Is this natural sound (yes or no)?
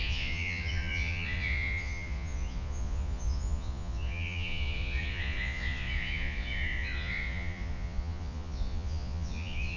no